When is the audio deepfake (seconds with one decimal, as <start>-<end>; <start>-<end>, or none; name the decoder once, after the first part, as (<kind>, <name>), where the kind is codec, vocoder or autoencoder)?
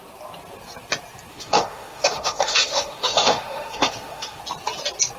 1.3-4.4 (autoencoder, DAC-VAE)